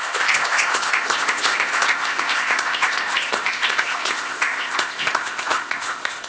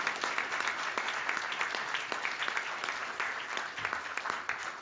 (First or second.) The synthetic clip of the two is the first